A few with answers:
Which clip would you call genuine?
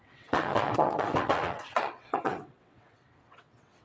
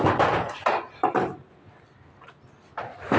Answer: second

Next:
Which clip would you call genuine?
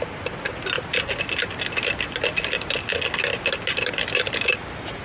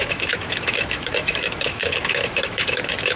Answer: first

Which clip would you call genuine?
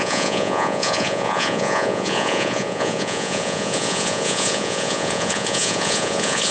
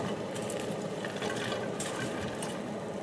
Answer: second